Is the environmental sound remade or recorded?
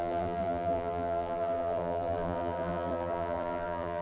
remade